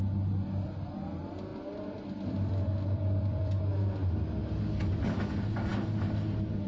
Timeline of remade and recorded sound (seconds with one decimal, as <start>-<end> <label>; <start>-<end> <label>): 0.0-1.5 recorded; 1.5-3.6 remade; 3.6-6.7 recorded